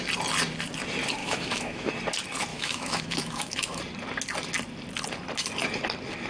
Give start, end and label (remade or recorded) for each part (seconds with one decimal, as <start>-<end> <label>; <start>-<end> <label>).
0.0-1.2 recorded; 1.2-1.9 remade; 1.9-2.5 recorded; 2.5-3.8 remade; 3.8-6.3 recorded